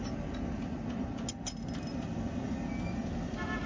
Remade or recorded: recorded